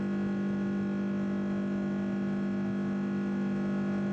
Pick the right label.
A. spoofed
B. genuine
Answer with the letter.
B